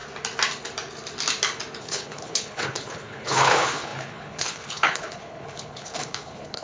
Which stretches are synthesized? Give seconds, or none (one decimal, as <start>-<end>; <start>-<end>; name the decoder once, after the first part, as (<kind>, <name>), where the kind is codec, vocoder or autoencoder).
1.8-6.6 (codec, HILCodec)